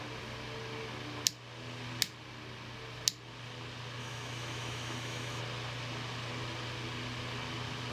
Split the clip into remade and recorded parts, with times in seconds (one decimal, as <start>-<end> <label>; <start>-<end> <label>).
0.0-4.0 recorded; 4.0-5.4 remade; 5.4-7.9 recorded